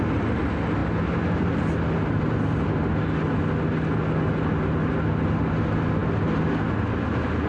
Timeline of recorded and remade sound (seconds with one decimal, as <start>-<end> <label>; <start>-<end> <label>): 0.0-7.5 recorded